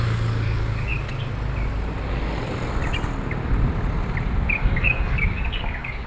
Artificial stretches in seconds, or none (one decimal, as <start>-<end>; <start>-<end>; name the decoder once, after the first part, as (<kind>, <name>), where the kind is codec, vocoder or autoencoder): 0.0-0.9 (codec, DAC); 4.6-6.1